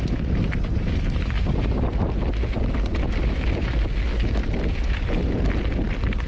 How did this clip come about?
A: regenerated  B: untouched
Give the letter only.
B